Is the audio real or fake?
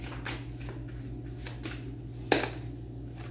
real